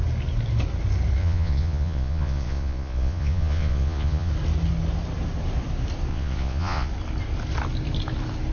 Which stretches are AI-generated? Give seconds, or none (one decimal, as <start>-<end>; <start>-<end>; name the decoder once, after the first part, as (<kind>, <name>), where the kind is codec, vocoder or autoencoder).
1.2-4.3 (vocoder, Vocos); 6.1-6.9